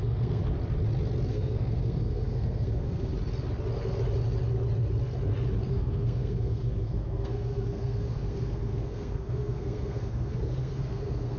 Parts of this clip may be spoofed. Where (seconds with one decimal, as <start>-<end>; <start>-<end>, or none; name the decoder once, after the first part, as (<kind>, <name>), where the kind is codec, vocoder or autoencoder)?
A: 0.0-0.4 (codec, SNAC); 1.3-3.1; 5.7-11.4